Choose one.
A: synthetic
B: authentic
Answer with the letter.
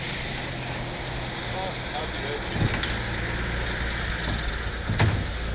B